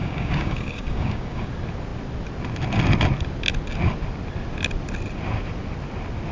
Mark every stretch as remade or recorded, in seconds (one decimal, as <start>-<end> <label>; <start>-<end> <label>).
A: 0.0-1.5 remade; 1.5-6.3 recorded